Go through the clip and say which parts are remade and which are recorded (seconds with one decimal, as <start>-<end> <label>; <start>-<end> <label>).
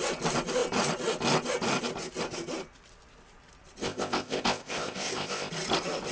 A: 0.0-3.8 recorded; 3.8-5.5 remade; 5.5-6.1 recorded